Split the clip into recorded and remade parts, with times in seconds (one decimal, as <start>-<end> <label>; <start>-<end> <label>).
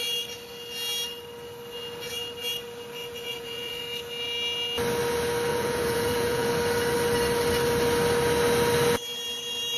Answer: 0.0-3.0 recorded; 3.0-3.8 remade; 3.8-5.5 recorded; 5.5-6.5 remade; 6.5-9.8 recorded